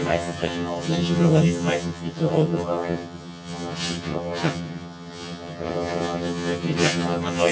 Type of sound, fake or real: fake